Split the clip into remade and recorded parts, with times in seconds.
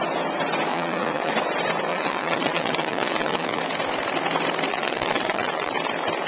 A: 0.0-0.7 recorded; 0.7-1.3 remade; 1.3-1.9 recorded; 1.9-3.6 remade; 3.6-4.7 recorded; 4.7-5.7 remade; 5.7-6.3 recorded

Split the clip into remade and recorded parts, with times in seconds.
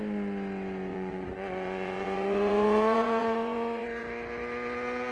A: 0.0-0.9 recorded; 0.9-4.0 remade; 4.0-5.1 recorded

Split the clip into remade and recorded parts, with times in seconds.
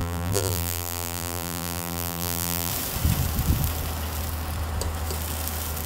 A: 0.0-2.7 remade; 2.7-5.9 recorded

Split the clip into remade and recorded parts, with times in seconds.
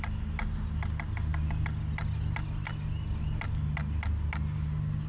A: 0.0-5.1 recorded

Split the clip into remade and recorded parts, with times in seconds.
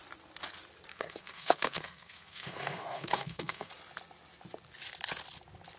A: 0.0-0.9 recorded; 0.9-3.7 remade; 3.7-5.8 recorded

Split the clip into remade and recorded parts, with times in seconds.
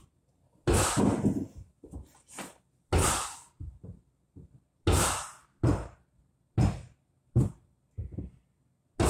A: 0.0-9.1 recorded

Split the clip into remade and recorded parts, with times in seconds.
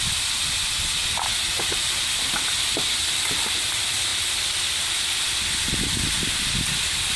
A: 0.0-7.2 recorded